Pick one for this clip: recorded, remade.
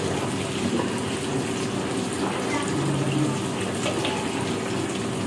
recorded